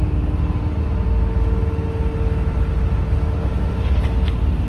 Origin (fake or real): real